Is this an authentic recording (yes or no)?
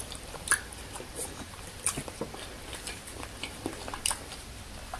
no